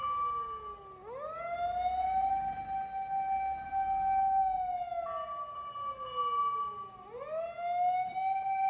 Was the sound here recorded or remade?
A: recorded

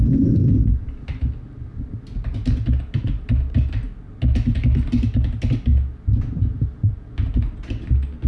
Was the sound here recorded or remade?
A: recorded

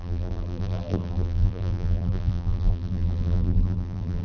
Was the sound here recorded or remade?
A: remade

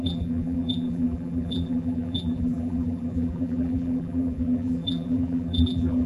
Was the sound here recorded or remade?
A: remade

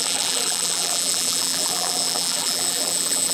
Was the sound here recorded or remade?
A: remade